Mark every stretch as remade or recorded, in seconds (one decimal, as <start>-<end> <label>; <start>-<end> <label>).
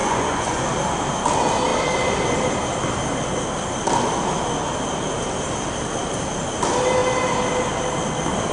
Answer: 0.0-0.6 remade; 0.6-8.5 recorded